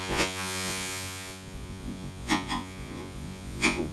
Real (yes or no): no